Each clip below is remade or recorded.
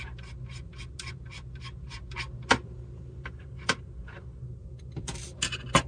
recorded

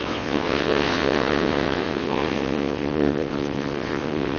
remade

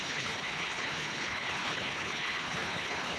remade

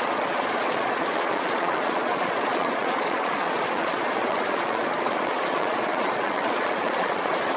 remade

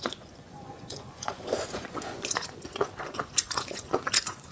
remade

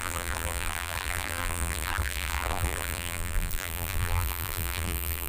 remade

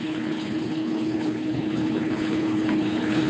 remade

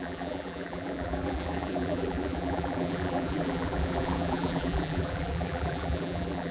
remade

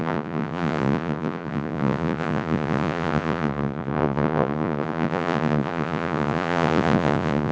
remade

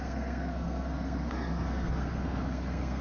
remade